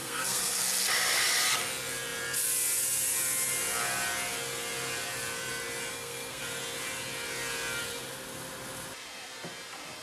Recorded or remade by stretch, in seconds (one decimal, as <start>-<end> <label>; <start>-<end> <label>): 0.0-0.6 remade; 0.6-5.9 recorded; 5.9-6.4 remade; 6.4-10.0 recorded

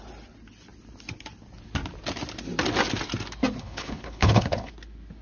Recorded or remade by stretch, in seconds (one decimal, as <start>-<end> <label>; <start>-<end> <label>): 0.0-3.6 recorded; 3.6-4.7 remade; 4.7-5.2 recorded

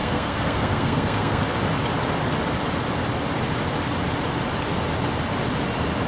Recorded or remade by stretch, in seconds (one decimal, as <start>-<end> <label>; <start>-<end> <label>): 0.0-1.4 remade; 1.4-6.1 recorded

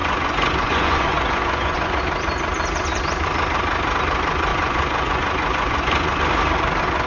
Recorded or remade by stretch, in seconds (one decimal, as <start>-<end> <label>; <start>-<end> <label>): 0.0-2.0 remade; 2.0-4.5 recorded; 4.5-6.2 remade; 6.2-7.1 recorded

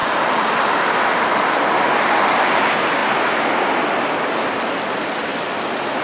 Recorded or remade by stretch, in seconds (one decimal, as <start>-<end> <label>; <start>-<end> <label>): 0.0-6.0 recorded

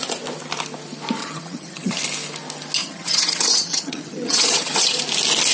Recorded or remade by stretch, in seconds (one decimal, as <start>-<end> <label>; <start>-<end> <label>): 0.0-1.2 recorded; 1.2-2.0 remade; 2.0-2.8 recorded; 2.8-5.0 remade; 5.0-5.5 recorded

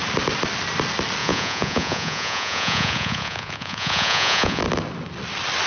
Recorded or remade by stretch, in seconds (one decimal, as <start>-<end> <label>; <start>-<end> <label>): 0.0-1.2 recorded; 1.2-4.6 remade; 4.6-5.7 recorded